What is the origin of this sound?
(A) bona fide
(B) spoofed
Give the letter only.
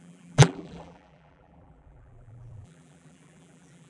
B